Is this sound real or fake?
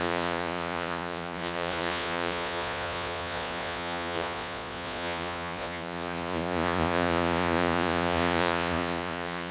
fake